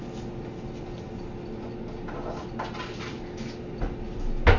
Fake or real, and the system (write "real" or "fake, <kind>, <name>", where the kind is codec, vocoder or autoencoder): real